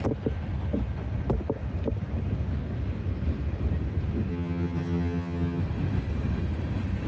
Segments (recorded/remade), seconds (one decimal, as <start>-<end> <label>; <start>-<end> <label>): 0.0-4.3 recorded; 4.3-5.6 remade; 5.6-7.1 recorded

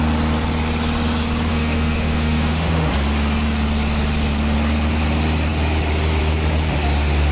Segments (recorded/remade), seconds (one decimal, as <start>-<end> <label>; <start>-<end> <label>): 0.0-1.5 recorded; 1.5-2.9 remade; 2.9-7.3 recorded

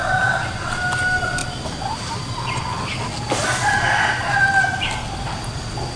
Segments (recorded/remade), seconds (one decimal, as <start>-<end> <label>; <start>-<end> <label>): 0.0-6.0 recorded

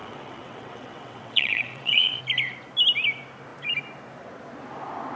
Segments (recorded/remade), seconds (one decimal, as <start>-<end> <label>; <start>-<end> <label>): 0.0-2.2 remade; 2.2-5.2 recorded

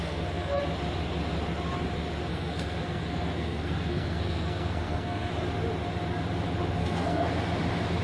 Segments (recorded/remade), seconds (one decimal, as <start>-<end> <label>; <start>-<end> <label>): 0.0-0.6 remade; 0.6-2.3 recorded; 2.3-5.3 remade; 5.3-6.8 recorded; 6.8-7.3 remade; 7.3-8.0 recorded

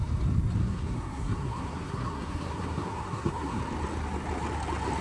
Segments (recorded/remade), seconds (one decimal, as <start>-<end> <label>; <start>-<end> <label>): 0.0-0.6 recorded; 0.6-3.6 remade; 3.6-5.0 recorded